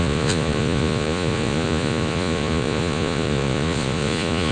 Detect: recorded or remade remade